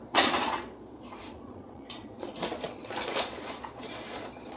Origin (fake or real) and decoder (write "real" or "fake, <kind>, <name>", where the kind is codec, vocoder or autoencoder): fake, vocoder, Vocos